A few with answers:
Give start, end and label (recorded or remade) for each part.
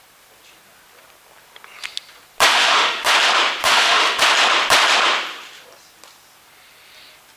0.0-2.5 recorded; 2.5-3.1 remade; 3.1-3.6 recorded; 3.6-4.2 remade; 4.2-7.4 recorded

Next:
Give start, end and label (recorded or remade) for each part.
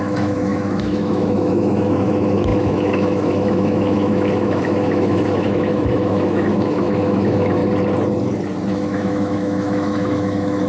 0.0-7.6 remade; 7.6-8.7 recorded; 8.7-10.7 remade